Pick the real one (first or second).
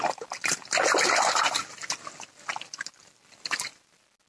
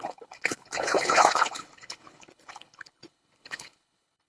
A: first